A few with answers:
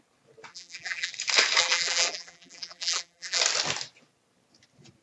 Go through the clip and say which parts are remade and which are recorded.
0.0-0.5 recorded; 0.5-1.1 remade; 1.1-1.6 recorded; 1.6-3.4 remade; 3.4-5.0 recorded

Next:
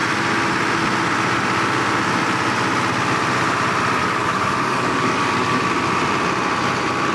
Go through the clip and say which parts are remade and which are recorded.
0.0-4.0 recorded; 4.0-5.6 remade; 5.6-7.1 recorded

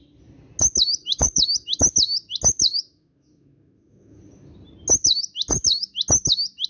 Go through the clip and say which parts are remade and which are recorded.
0.0-1.0 recorded; 1.0-1.8 remade; 1.8-2.7 recorded; 2.7-4.2 remade; 4.2-6.7 recorded

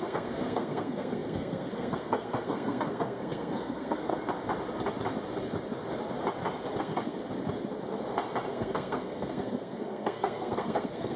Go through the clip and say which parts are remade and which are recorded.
0.0-4.1 remade; 4.1-6.8 recorded; 6.8-7.2 remade; 7.2-8.5 recorded; 8.5-11.2 remade

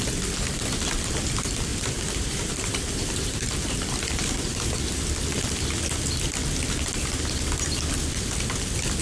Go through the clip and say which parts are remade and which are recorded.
0.0-1.7 recorded; 1.7-4.9 remade; 4.9-9.0 recorded

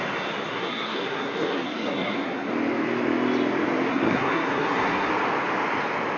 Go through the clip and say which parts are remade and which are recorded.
0.0-0.5 recorded; 0.5-2.5 remade; 2.5-3.9 recorded; 3.9-5.1 remade; 5.1-6.2 recorded